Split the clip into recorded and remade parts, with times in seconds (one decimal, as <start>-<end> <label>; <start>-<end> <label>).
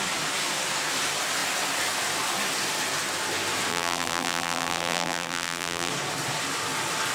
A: 0.0-3.7 recorded; 3.7-5.9 remade; 5.9-7.1 recorded